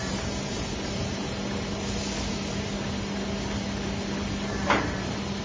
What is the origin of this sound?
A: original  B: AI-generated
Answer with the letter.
A